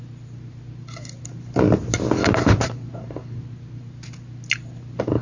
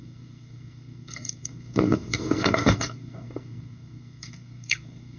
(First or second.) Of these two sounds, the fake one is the second